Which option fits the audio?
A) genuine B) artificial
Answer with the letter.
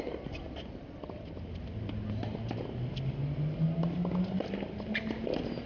A